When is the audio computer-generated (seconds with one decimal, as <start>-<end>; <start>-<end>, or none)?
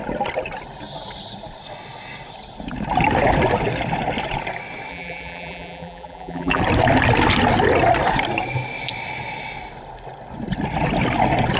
4.9-6.6